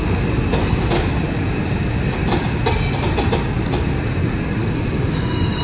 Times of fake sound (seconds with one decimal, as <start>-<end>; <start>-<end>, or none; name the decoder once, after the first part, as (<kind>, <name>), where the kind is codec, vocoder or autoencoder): 4.6-5.6 (codec, DAC)